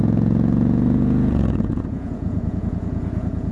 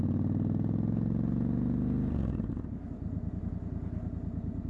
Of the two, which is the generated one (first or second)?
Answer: first